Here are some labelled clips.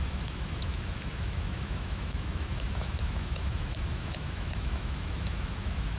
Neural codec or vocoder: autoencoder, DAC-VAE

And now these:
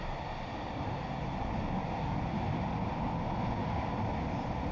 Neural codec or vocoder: none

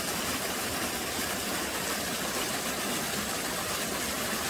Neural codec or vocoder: none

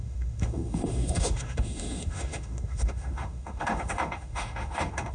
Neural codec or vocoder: autoencoder, DAC-VAE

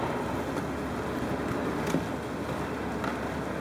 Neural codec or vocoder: none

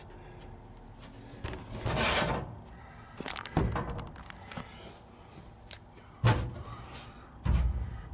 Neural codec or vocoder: none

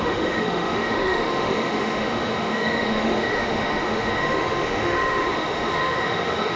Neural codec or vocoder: autoencoder, DAC-VAE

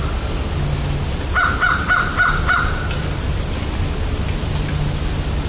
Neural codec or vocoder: none